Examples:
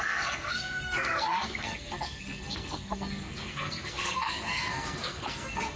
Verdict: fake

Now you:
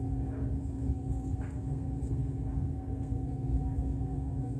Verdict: fake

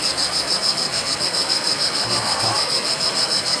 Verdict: fake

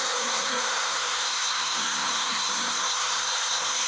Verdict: fake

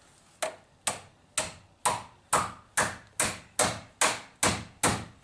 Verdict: real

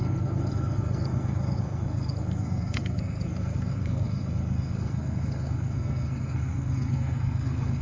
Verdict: fake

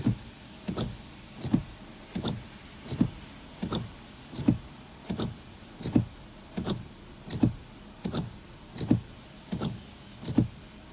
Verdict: real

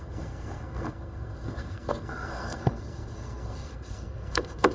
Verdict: fake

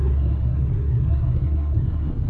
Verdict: fake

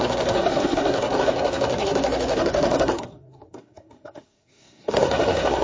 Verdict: fake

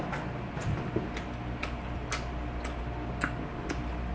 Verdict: real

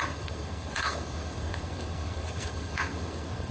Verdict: fake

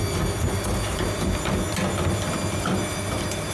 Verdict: real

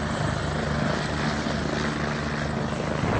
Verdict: real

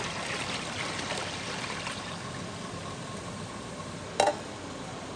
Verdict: real